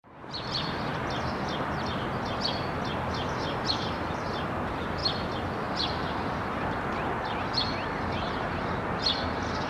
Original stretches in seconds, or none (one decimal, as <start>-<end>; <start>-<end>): 0.0-5.0